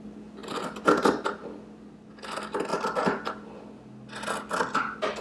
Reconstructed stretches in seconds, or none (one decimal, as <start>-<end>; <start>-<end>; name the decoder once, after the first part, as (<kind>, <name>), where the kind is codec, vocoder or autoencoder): none